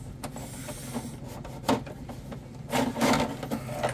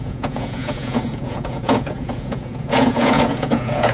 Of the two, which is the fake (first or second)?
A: second